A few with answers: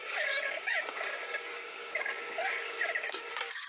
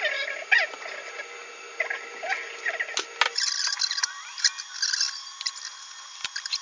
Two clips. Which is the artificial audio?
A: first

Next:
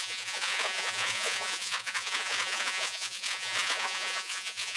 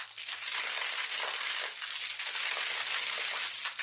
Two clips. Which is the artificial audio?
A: first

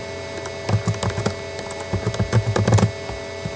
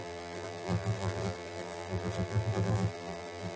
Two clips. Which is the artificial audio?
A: second